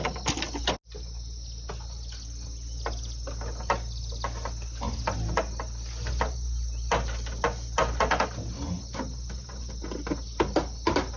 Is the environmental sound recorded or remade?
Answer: recorded